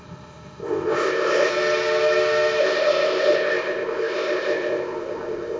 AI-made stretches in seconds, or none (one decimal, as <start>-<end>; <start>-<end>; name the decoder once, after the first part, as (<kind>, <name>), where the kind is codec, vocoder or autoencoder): 0.0-1.5 (codec, ZipCodec); 2.6-5.6